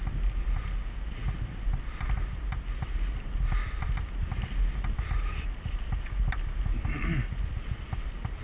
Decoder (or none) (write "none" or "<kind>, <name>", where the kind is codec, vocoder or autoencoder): none